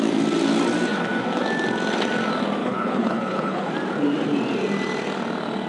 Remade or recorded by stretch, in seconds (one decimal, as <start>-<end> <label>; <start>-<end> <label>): 0.0-2.6 recorded; 2.6-3.7 remade; 3.7-5.7 recorded